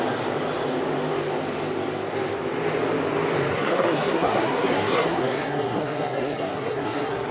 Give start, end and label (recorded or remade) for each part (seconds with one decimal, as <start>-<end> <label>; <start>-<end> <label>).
0.0-3.5 recorded; 3.5-7.3 remade